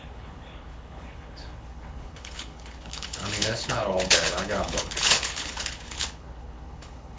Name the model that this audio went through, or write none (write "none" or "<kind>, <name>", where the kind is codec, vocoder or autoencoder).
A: codec, HILCodec